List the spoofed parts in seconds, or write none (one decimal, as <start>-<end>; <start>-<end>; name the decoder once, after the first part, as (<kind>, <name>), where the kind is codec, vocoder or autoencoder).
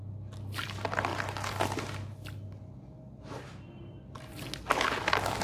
none